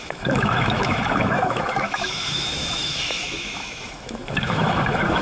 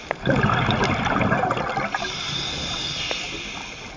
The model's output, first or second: first